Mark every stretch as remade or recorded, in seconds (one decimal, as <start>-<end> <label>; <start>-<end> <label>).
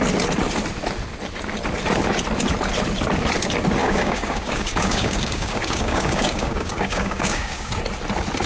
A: 0.0-3.8 recorded; 3.8-7.7 remade; 7.7-8.5 recorded